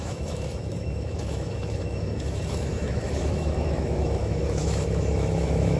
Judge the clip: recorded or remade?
remade